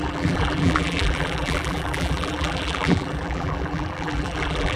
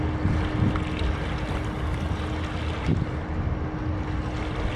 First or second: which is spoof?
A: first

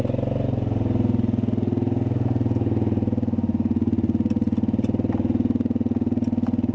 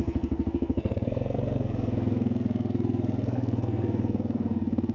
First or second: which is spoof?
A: second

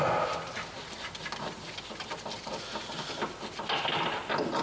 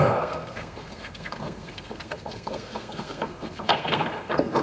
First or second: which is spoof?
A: second